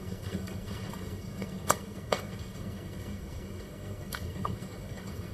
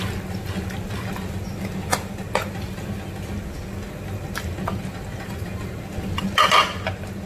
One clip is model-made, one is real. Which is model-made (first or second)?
first